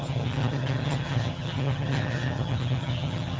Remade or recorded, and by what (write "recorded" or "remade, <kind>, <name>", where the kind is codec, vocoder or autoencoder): remade, vocoder, HiFi-GAN